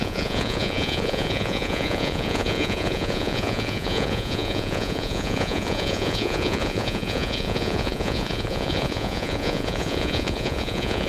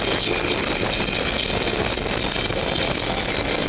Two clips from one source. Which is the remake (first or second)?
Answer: first